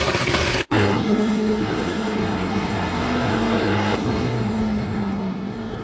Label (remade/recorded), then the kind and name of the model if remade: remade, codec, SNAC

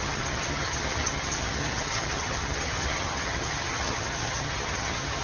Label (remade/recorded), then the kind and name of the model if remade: remade, vocoder, HiFi-GAN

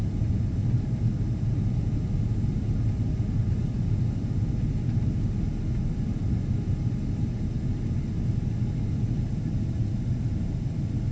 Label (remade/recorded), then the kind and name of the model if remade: recorded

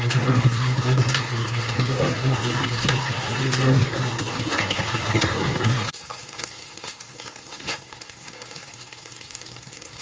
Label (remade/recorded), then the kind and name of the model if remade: remade, codec, SNAC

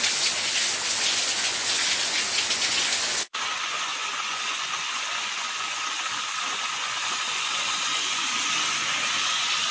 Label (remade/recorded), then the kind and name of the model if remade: remade, vocoder, Vocos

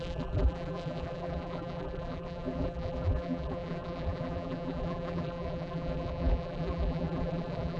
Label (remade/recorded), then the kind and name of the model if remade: remade, vocoder, BigVGAN v2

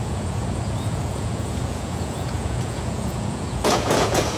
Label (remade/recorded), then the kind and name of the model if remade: remade, vocoder, Vocos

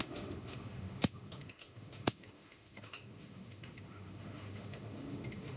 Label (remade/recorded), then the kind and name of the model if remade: remade, autoencoder, DAC-VAE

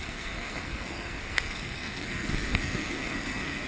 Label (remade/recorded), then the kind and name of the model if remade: remade, codec, SNAC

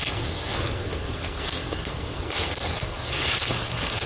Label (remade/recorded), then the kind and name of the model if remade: remade, codec, SNAC